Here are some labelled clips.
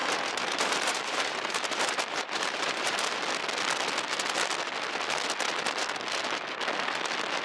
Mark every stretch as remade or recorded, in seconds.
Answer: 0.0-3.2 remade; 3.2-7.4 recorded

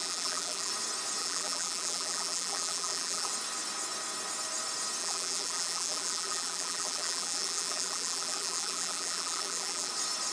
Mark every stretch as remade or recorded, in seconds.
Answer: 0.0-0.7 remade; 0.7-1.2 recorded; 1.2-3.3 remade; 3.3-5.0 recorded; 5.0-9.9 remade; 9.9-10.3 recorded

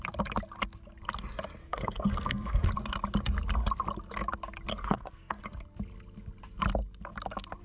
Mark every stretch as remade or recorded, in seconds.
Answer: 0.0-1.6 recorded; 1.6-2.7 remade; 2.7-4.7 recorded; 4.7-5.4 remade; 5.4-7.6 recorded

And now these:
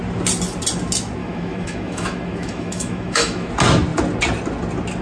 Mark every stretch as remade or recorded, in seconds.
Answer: 0.0-1.2 recorded; 1.2-3.5 remade; 3.5-5.0 recorded

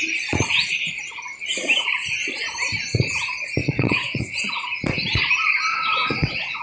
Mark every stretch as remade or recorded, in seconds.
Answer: 0.0-3.6 recorded; 3.6-4.2 remade; 4.2-5.7 recorded; 5.7-6.6 remade